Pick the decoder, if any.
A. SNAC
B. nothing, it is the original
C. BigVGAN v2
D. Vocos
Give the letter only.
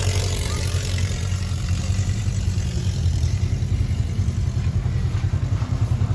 C